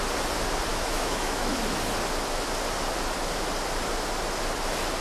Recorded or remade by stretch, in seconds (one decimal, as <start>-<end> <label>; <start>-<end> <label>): 0.0-0.7 recorded; 0.7-1.6 remade; 1.6-5.0 recorded